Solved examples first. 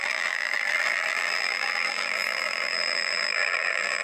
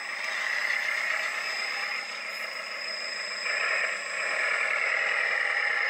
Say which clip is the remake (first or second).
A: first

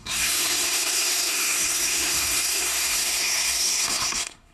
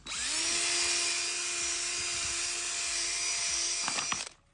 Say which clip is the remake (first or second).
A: first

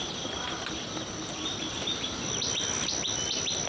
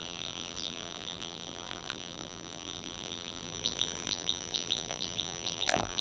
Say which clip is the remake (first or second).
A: second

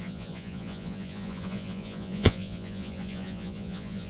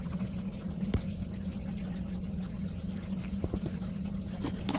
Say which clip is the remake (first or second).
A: first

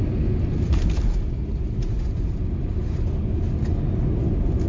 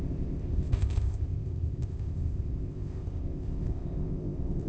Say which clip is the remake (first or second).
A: second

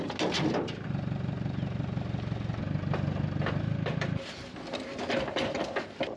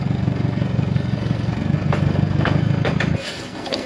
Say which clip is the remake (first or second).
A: second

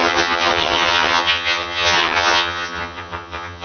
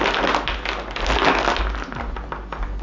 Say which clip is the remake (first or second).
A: first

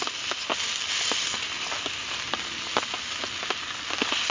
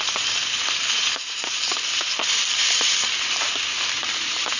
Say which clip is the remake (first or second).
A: second